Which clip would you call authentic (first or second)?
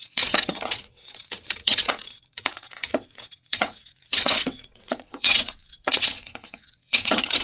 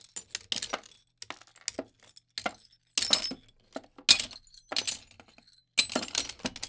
second